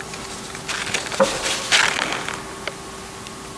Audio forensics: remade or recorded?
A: recorded